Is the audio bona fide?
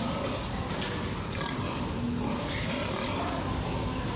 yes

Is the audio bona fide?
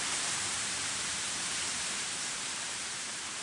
no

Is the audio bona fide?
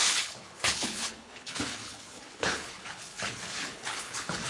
no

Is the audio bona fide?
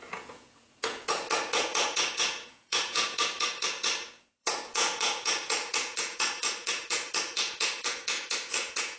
no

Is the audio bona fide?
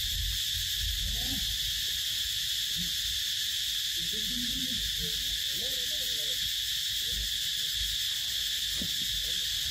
yes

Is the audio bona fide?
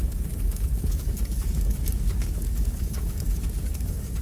no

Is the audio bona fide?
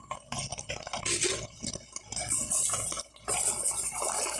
yes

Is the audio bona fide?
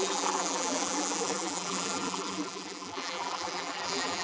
no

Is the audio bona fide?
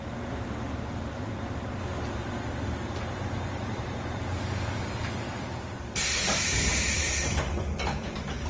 no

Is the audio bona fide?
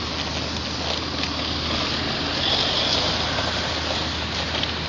yes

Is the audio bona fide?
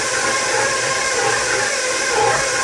yes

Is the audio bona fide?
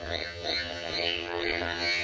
no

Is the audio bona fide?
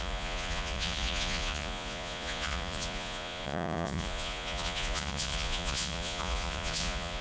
no